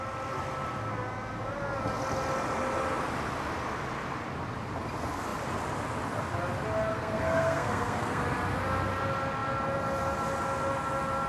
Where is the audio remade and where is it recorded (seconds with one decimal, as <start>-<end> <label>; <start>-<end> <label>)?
0.0-6.9 recorded; 6.9-8.2 remade; 8.2-11.3 recorded